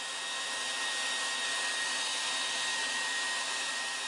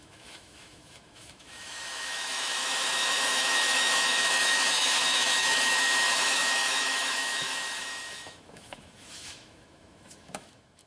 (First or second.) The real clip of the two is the first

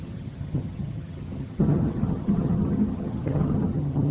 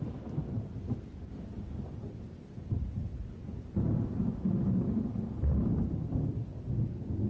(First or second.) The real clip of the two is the second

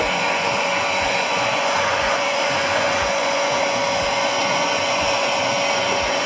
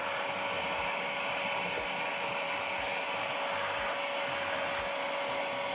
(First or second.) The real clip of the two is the second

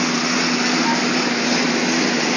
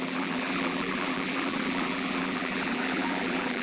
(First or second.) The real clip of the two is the first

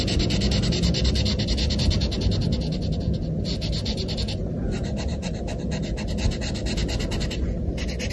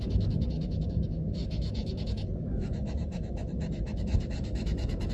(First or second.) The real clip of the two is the first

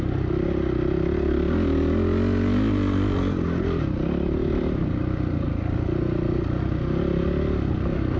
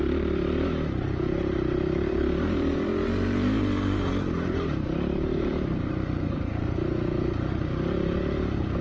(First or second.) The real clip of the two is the first